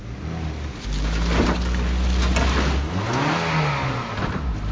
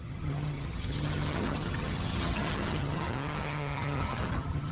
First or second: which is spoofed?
second